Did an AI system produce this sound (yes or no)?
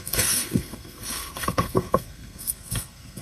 yes